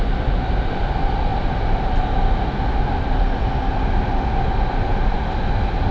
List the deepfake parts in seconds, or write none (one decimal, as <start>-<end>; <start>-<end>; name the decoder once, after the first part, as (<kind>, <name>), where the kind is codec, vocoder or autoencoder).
none